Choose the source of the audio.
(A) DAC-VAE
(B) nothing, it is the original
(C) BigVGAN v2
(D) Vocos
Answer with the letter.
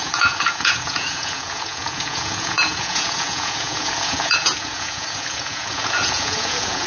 D